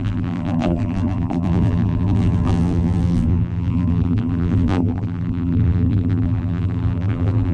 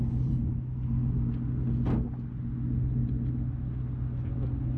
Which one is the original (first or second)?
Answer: second